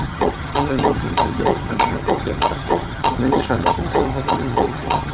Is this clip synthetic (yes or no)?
yes